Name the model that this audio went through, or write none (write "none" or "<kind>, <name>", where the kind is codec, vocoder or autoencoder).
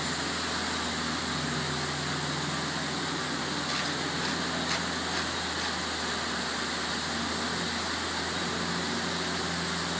none